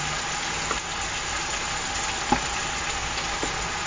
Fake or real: real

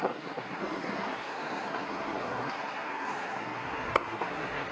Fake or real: fake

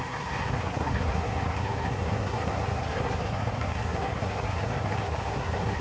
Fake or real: fake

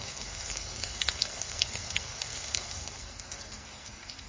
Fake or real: fake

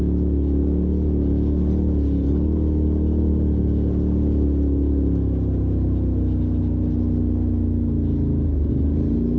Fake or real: real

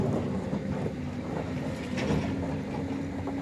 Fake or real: real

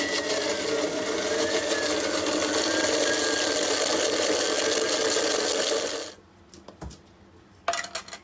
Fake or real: real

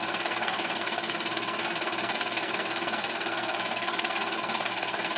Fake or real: fake